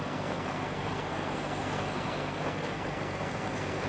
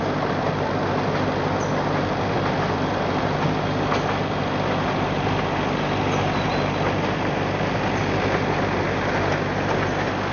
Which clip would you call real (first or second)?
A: second